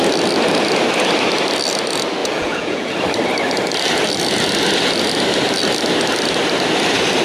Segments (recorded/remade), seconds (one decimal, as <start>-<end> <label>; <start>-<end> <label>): 0.0-2.2 recorded; 2.2-2.9 remade; 2.9-7.2 recorded